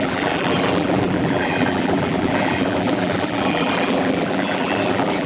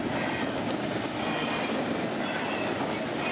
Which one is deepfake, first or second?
first